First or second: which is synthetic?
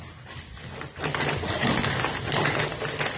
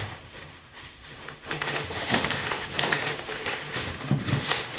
second